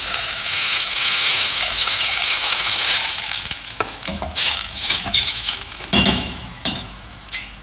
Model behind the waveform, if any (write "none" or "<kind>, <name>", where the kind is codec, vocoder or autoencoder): autoencoder, DAC-VAE